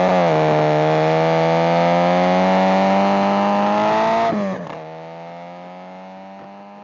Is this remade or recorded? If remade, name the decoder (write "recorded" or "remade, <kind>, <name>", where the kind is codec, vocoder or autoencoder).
recorded